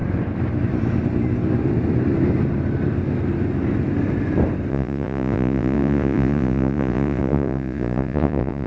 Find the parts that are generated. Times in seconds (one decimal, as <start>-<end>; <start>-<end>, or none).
4.7-8.7